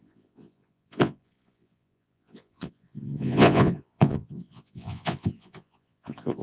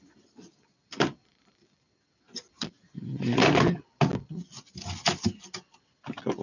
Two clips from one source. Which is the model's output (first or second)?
first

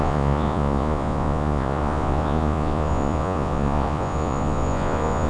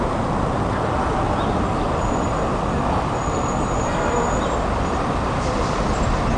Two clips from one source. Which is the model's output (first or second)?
first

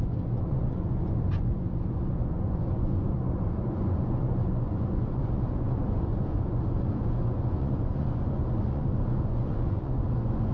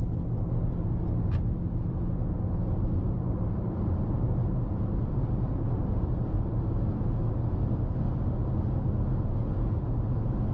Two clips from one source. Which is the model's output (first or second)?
first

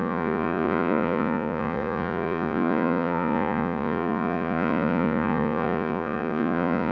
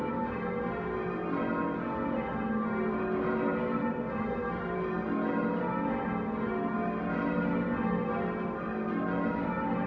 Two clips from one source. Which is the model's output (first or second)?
first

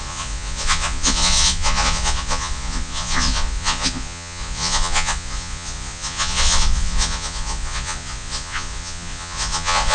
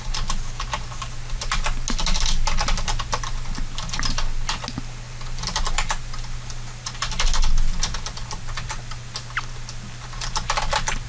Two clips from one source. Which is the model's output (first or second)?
first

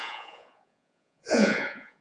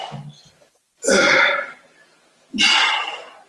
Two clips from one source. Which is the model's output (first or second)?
first